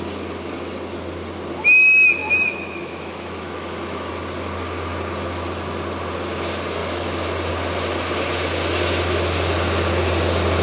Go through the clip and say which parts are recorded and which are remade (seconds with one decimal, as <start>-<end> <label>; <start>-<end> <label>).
0.0-2.2 recorded; 2.2-4.1 remade; 4.1-6.8 recorded; 6.8-7.5 remade; 7.5-10.6 recorded